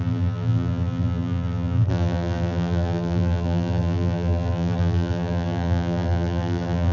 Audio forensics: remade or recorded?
remade